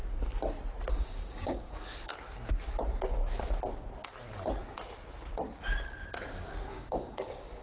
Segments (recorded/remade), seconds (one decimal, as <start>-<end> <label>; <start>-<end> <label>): 0.0-0.9 recorded; 0.9-2.1 remade; 2.1-6.7 recorded; 6.7-7.6 remade